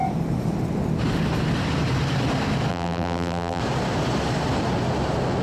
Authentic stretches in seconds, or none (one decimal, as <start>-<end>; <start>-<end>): 0.0-2.7; 3.6-5.4